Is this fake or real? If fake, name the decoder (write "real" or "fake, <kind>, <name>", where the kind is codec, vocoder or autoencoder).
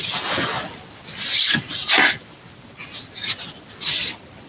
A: real